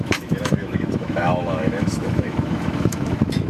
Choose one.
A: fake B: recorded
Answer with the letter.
A